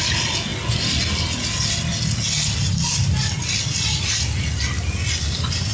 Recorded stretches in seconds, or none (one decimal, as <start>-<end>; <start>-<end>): 0.0-5.7